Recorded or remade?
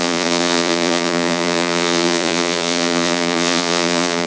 remade